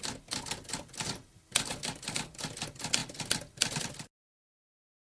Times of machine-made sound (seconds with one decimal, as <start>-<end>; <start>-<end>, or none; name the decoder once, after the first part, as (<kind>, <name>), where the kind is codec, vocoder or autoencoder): none